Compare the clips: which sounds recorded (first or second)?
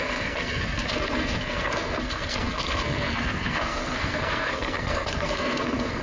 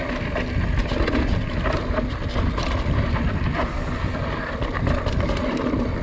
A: second